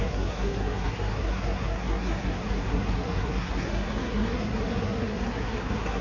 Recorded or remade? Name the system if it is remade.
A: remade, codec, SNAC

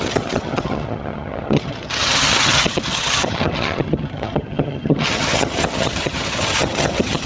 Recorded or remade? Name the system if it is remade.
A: remade, vocoder, HiFi-GAN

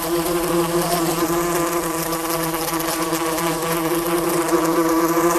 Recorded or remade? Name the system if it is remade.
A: remade, vocoder, BigVGAN v2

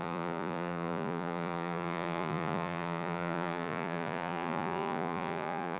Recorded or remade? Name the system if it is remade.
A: remade, vocoder, Vocos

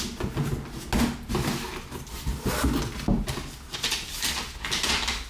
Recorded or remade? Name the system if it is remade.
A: recorded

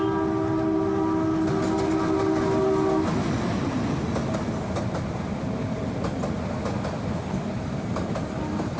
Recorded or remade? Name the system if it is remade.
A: recorded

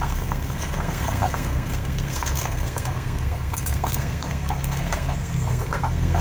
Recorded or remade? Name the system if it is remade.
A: remade, codec, SNAC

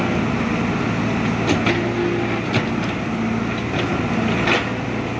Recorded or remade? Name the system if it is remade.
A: recorded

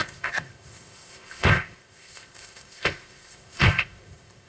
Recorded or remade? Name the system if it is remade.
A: remade, codec, ZipCodec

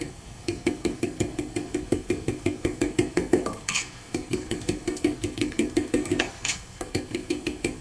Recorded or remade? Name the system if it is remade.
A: remade, codec, SNAC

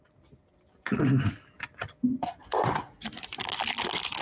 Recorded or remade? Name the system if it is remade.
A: recorded